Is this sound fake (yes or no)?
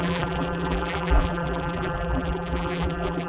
yes